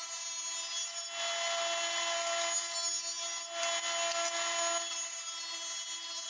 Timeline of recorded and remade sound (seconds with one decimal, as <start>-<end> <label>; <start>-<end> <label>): 0.0-6.3 recorded